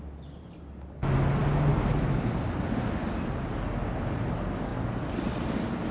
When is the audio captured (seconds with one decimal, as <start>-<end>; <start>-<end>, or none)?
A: 0.0-5.9